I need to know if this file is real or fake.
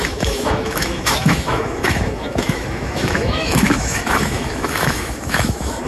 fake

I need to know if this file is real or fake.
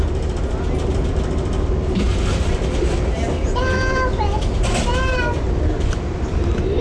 real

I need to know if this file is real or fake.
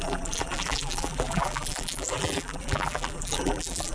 fake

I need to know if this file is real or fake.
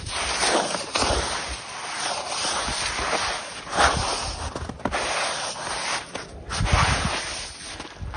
real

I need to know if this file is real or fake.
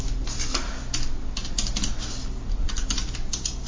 real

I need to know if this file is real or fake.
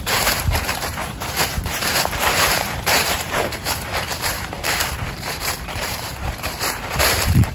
fake